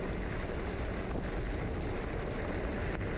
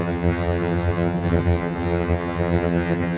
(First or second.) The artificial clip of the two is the second